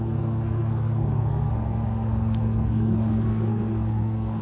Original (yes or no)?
no